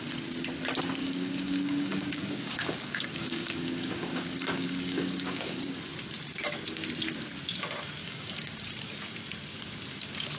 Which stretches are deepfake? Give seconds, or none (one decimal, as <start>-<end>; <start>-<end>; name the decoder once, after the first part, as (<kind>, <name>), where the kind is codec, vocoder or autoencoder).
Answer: 1.0-5.6 (codec, DAC); 8.0-8.7